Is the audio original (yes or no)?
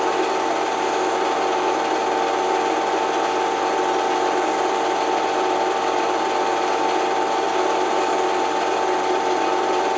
yes